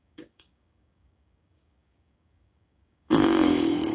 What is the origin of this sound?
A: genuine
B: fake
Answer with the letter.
B